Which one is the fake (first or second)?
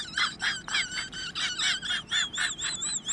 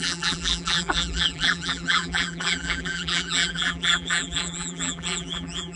second